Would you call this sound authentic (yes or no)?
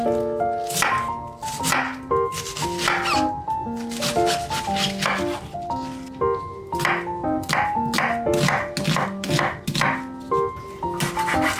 yes